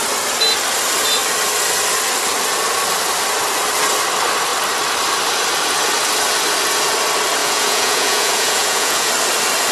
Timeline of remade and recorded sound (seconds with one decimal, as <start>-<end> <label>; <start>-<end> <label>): 0.0-7.4 recorded; 7.4-9.1 remade; 9.1-9.7 recorded